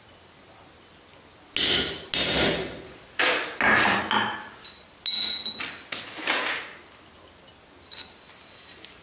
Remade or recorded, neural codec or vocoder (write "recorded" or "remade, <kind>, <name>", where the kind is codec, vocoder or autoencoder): recorded